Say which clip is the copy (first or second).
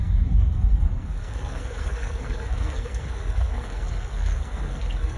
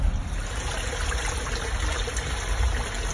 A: first